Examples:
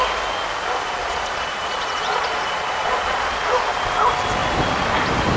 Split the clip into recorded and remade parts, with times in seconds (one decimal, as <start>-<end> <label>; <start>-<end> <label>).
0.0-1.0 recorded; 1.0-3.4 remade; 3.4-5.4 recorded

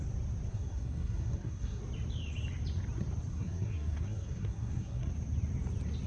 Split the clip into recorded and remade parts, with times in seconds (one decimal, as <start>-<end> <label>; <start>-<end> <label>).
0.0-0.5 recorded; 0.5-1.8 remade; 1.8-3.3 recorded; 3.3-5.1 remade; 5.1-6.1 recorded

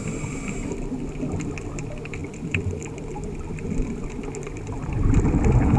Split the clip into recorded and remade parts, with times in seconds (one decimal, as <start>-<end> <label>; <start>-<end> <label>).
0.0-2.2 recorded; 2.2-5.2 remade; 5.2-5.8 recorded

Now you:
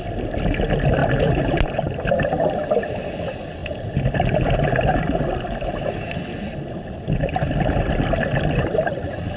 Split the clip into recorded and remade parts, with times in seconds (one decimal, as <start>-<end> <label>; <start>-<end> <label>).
0.0-9.4 recorded

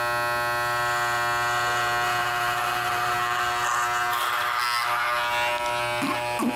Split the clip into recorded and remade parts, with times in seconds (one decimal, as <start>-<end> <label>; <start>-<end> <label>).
0.0-2.2 recorded; 2.2-3.1 remade; 3.1-6.6 recorded

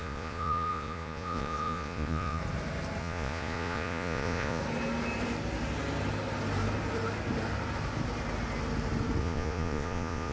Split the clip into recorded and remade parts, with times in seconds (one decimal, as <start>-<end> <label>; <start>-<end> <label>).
0.0-2.4 remade; 2.4-3.0 recorded; 3.0-4.6 remade; 4.6-9.2 recorded; 9.2-10.3 remade

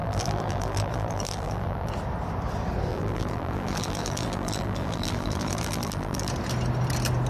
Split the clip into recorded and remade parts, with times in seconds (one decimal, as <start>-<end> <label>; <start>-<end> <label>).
0.0-1.9 remade; 1.9-2.9 recorded; 2.9-6.3 remade; 6.3-7.3 recorded

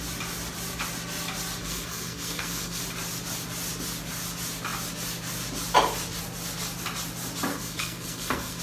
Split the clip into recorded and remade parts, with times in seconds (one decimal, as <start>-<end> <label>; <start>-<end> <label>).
0.0-1.6 recorded; 1.6-2.8 remade; 2.8-7.5 recorded; 7.5-8.6 remade